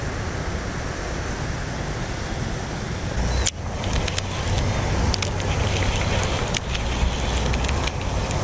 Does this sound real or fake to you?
real